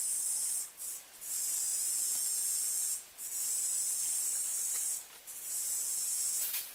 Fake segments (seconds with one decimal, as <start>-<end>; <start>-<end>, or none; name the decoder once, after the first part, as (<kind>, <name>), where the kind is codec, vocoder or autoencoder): 1.7-3.4 (vocoder, Vocos); 4.5-6.7